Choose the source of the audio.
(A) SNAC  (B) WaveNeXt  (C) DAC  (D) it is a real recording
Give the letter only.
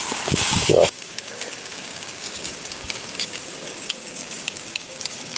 C